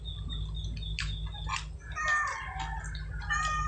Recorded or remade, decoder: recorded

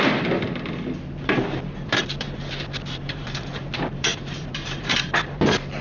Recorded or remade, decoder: remade, vocoder, BigVGAN v2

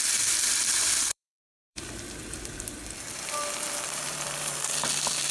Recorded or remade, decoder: remade, vocoder, BigVGAN v2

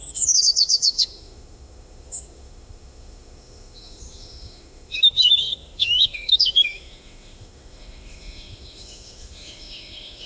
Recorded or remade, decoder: remade, autoencoder, DAC-VAE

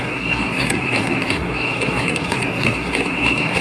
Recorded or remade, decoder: remade, codec, SNAC